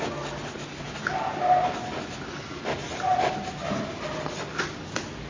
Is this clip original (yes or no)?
yes